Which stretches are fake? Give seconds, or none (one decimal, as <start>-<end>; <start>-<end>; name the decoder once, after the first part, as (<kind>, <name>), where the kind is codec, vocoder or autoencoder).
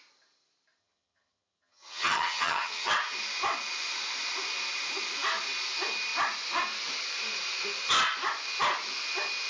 0.8-2.9 (vocoder, HiFi-GAN)